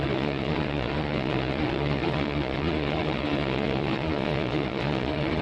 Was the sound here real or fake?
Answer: fake